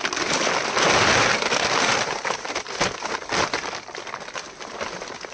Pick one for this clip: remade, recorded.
recorded